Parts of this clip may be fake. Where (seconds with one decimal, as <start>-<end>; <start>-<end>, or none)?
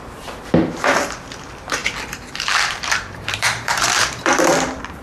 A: 1.8-5.0